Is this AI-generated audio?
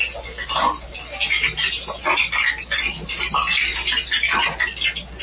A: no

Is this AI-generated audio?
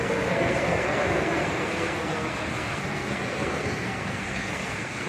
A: yes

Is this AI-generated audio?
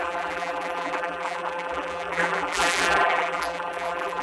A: yes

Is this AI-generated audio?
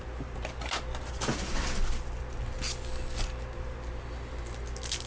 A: no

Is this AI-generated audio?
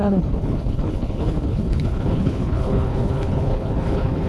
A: yes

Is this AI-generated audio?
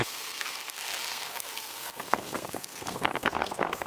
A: yes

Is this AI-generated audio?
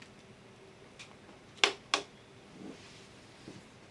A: no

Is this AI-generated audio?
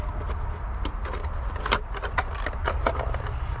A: no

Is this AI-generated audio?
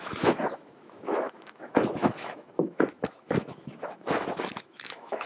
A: yes